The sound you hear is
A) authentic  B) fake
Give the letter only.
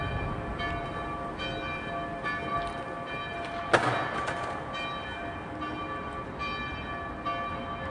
A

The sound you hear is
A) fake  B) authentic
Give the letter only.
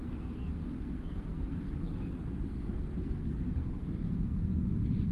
A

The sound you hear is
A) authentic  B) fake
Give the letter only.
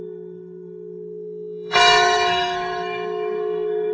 B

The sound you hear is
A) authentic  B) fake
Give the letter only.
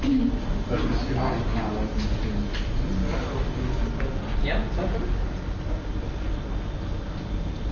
A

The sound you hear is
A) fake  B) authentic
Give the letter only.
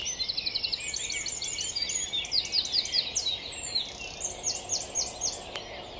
B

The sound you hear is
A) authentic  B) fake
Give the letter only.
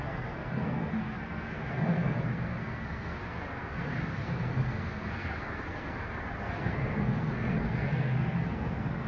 B